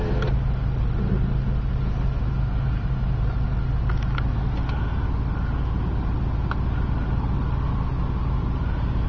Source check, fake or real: real